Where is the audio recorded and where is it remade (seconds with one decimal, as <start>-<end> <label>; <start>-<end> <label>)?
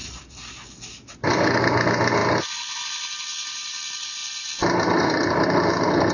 0.0-6.1 recorded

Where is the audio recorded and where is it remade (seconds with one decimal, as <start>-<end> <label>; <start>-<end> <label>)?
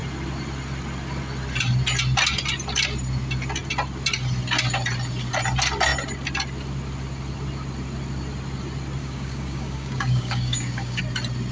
0.0-9.0 recorded; 9.0-11.0 remade; 11.0-11.5 recorded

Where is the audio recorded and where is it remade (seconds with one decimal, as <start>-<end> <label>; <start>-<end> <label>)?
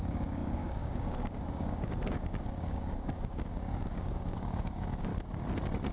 0.0-5.1 remade; 5.1-5.9 recorded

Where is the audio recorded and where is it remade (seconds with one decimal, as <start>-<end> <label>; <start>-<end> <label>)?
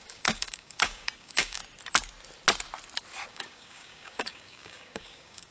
0.0-1.6 remade; 1.6-3.3 recorded; 3.3-5.5 remade